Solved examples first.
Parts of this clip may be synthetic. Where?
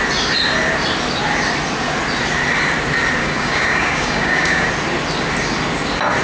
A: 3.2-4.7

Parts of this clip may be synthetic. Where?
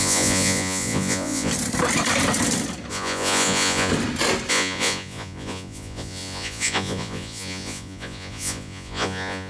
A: 0.0-1.5; 2.9-3.9; 4.5-9.5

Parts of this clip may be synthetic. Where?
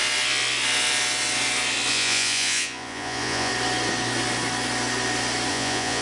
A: 1.9-3.5; 5.5-6.0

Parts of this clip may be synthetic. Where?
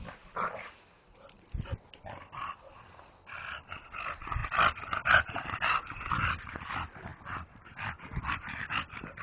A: none